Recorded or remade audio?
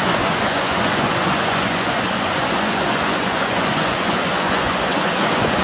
remade